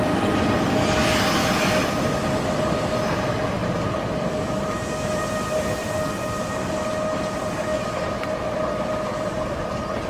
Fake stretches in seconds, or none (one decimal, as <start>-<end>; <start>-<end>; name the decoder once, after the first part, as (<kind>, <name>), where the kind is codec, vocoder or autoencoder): 3.6-6.7 (vocoder, BigVGAN v2)